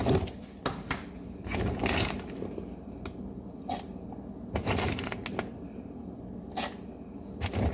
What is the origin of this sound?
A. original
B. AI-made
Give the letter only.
A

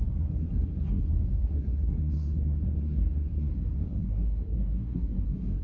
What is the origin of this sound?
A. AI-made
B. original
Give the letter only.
A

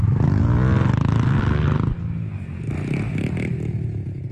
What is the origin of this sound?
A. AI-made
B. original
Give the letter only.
B